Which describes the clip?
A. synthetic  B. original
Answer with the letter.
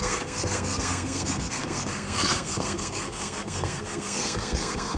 A